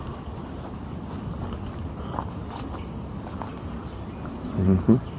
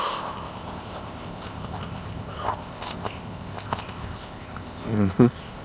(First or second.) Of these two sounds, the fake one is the second